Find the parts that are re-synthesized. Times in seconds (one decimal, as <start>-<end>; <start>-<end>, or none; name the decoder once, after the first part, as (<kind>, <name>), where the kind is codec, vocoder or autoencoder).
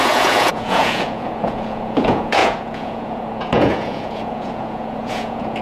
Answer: 0.0-5.6 (vocoder, Vocos)